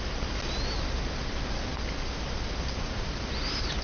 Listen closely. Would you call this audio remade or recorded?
recorded